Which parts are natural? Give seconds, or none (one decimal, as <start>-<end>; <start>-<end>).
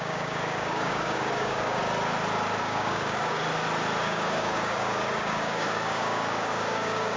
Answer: 1.8-2.6; 3.4-4.0